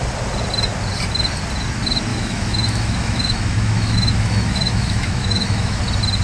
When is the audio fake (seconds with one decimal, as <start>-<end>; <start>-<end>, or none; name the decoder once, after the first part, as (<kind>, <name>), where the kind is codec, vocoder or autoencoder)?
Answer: 2.1-5.8 (autoencoder, DAC-VAE)